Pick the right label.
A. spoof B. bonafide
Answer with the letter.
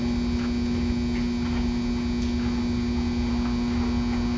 B